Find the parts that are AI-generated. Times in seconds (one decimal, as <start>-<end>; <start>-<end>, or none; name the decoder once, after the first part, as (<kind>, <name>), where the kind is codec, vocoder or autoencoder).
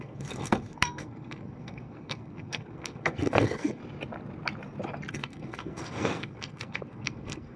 0.0-3.8 (codec, SNAC); 5.1-7.6